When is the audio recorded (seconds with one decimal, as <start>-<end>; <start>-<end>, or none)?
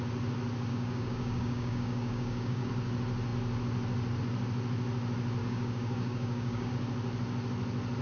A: 0.0-0.7; 2.7-5.4; 6.7-8.0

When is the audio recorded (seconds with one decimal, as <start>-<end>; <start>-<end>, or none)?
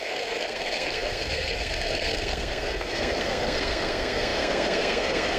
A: none